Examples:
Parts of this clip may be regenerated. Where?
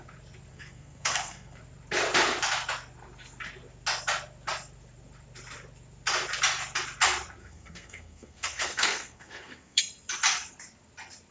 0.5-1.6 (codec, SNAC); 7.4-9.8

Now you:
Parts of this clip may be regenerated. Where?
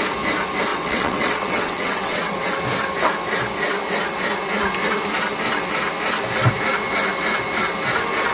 0.7-2.6 (vocoder, WaveNeXt)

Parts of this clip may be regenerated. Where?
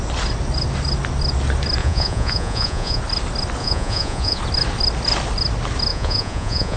1.8-3.0 (vocoder, Vocos); 3.6-4.4; 5.9-6.8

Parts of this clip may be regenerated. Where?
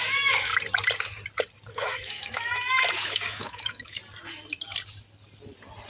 0.0-0.5 (autoencoder, DAC-VAE); 1.7-4.0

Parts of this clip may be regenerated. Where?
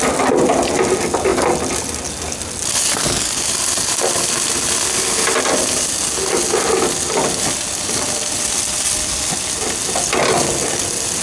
none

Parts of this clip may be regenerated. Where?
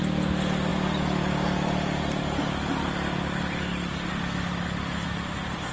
none